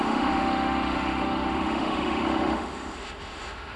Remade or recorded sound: remade